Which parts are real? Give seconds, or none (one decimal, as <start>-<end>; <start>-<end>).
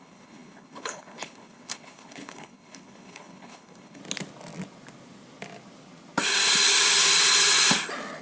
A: 4.0-8.2